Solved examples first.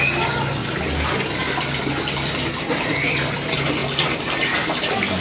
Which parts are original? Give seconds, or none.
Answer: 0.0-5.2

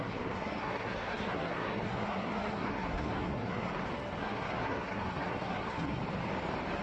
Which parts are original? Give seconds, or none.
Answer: 3.7-4.2; 6.0-6.8

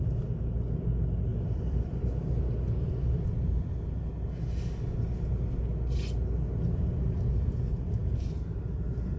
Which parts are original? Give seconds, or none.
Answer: 0.0-1.3; 2.5-9.2

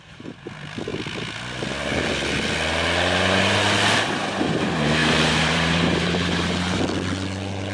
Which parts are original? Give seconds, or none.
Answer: 0.0-5.0; 6.8-7.7

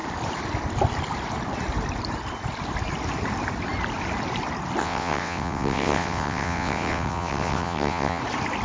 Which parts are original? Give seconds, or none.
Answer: 0.0-4.8; 8.2-8.6